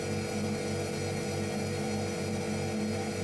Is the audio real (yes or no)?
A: yes